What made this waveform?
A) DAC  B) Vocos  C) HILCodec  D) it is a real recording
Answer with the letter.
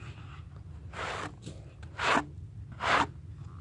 D